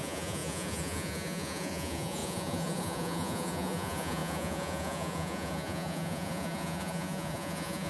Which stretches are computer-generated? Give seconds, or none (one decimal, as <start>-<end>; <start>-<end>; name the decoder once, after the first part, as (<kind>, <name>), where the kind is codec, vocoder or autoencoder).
0.0-7.9 (vocoder, Vocos)